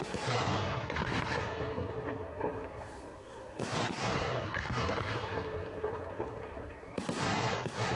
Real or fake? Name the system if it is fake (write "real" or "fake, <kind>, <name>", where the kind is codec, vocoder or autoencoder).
fake, codec, SNAC